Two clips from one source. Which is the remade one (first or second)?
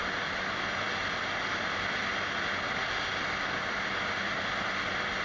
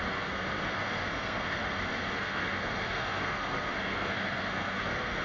second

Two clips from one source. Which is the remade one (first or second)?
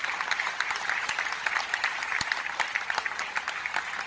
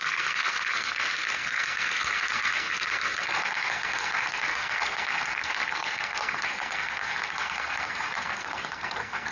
second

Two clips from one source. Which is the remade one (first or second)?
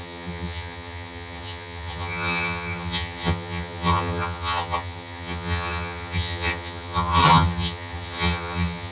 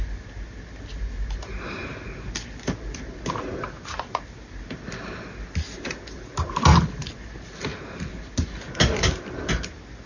first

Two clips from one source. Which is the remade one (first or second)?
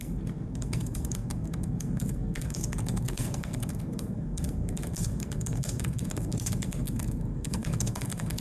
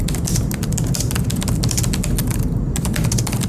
first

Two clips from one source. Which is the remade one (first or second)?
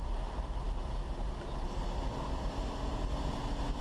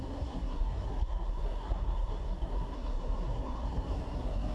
second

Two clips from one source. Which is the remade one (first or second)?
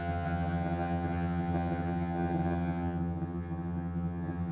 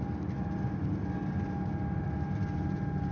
first